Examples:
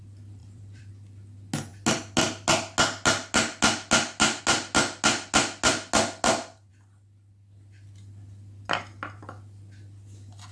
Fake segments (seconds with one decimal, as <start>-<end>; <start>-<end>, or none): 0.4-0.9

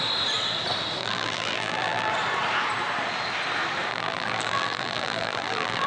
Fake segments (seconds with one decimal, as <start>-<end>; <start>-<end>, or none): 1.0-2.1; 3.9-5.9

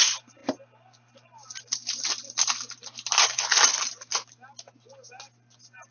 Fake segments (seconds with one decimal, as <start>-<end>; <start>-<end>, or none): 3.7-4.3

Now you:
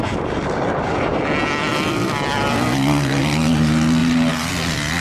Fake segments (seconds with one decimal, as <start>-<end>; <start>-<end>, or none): 0.0-1.2; 4.0-4.5

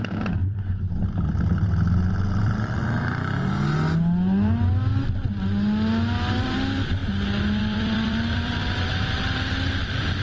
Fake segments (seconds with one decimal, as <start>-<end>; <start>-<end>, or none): 0.0-0.4; 2.1-2.8; 6.3-7.0; 7.6-10.2